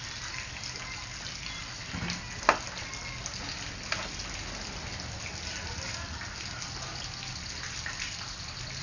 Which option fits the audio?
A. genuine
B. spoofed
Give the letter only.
A